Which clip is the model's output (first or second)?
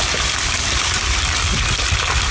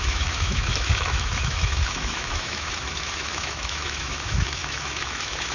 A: second